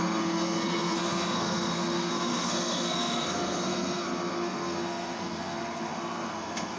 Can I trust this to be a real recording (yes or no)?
no